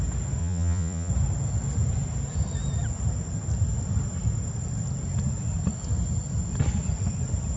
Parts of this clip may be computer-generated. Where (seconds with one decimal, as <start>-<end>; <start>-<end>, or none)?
0.4-1.1